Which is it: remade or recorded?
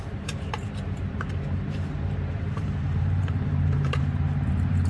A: remade